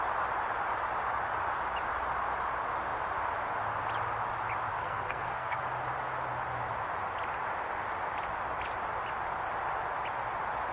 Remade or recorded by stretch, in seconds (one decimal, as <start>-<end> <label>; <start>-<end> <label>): 0.0-4.7 recorded; 4.7-5.6 remade; 5.6-10.7 recorded